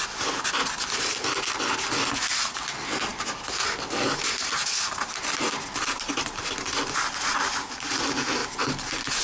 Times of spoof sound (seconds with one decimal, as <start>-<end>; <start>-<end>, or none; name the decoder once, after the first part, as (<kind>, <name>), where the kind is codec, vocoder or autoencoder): none

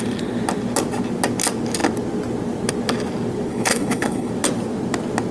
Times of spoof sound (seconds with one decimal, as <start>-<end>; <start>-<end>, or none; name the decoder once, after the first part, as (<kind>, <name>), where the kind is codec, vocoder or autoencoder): 3.5-4.3 (codec, HILCodec)

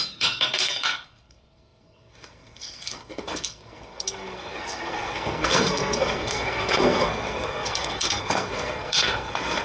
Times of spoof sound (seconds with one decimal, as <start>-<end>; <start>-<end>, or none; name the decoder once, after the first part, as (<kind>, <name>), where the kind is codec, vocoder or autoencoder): 0.0-9.6 (codec, SNAC)

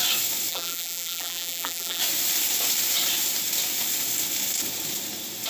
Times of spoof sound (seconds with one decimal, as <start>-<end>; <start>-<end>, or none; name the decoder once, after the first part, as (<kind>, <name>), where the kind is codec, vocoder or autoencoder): 0.5-2.0 (vocoder, BigVGAN v2)

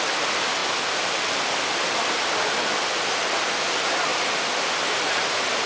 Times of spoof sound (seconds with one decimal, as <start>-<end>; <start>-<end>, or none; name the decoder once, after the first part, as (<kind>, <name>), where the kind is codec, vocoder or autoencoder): 0.6-3.0 (vocoder, BigVGAN v2); 4.1-4.7

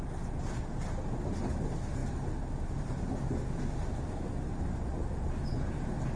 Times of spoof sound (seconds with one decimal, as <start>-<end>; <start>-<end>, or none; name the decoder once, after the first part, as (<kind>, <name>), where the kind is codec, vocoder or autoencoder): none

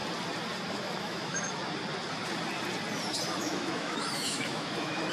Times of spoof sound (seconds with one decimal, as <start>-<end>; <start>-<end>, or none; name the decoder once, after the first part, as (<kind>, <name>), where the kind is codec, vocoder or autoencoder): 0.7-1.6 (autoencoder, DAC-VAE); 3.3-5.1